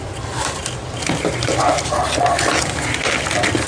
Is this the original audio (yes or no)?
yes